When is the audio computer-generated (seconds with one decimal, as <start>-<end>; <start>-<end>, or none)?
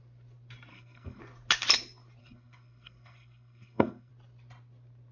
0.7-1.2; 2.2-4.1